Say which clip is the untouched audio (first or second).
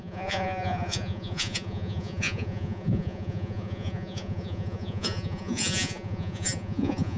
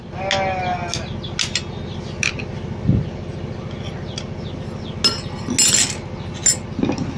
second